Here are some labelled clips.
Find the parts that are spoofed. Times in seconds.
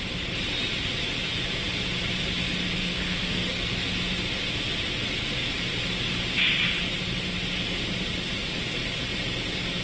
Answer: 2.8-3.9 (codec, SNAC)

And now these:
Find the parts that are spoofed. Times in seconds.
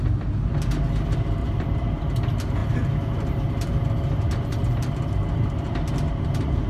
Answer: 1.4-2.0 (vocoder, BigVGAN v2); 2.6-6.7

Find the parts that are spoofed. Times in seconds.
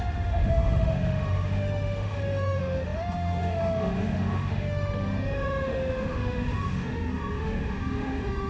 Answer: 0.0-8.5 (autoencoder, DAC-VAE)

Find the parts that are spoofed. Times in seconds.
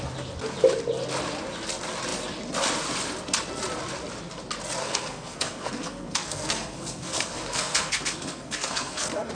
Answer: 4.8-9.3 (codec, SNAC)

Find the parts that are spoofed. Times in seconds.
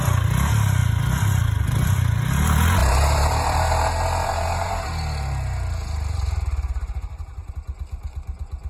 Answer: 2.8-7.5 (vocoder, BigVGAN v2)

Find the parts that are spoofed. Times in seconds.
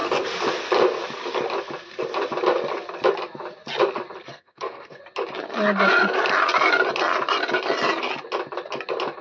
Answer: 4.3-5.0 (codec, SNAC)